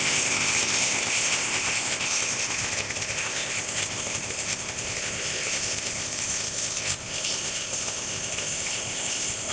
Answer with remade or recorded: remade